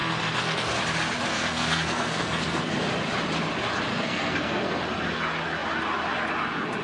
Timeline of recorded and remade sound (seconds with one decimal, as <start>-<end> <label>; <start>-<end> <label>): 0.0-0.7 remade; 0.7-1.3 recorded; 1.3-2.7 remade; 2.7-3.9 recorded; 3.9-4.8 remade; 4.8-6.8 recorded